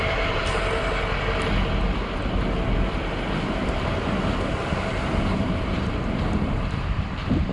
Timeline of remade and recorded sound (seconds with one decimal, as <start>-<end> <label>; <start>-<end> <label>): 0.0-0.4 remade; 0.4-4.9 recorded; 4.9-7.5 remade